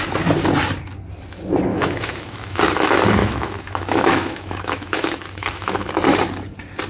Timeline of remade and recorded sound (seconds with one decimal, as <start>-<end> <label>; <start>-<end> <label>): 0.0-1.7 recorded; 1.7-2.6 remade; 2.6-3.2 recorded; 3.2-5.9 remade; 5.9-6.9 recorded

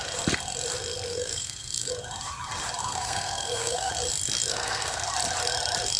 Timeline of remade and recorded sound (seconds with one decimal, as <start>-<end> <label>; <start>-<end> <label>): 0.0-1.1 recorded; 1.1-1.9 remade; 1.9-2.8 recorded; 2.8-3.9 remade; 3.9-4.5 recorded; 4.5-5.1 remade; 5.1-6.0 recorded

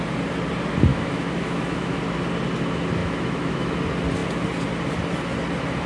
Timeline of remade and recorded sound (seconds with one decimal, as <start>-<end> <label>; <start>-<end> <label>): 0.0-0.9 recorded; 0.9-2.0 remade; 2.0-3.0 recorded; 3.0-3.7 remade; 3.7-5.9 recorded

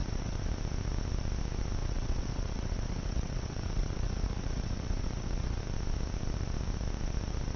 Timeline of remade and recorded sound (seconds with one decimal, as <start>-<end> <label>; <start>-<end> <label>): 0.0-0.5 remade; 0.5-1.8 recorded; 1.8-5.6 remade; 5.6-7.6 recorded

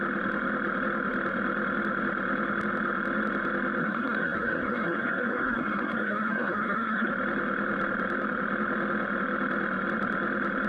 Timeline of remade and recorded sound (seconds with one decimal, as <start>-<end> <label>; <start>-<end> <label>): 0.0-3.8 recorded; 3.8-7.1 remade; 7.1-10.7 recorded

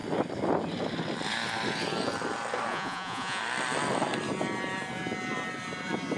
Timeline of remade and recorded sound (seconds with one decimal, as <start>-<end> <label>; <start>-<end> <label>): 0.0-2.7 recorded; 2.7-3.4 remade; 3.4-6.2 recorded

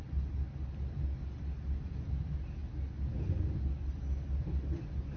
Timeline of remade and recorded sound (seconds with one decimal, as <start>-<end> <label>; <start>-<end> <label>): 0.0-5.2 recorded